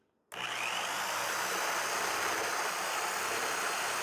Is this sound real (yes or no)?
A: yes